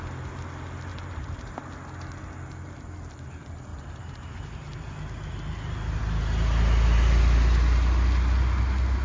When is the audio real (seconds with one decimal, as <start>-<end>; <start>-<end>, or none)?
0.0-0.9; 1.5-3.7; 4.5-9.0